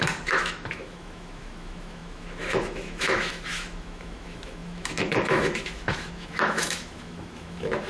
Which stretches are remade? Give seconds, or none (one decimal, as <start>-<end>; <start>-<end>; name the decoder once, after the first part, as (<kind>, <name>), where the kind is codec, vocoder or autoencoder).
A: 0.0-7.9 (autoencoder, DAC-VAE)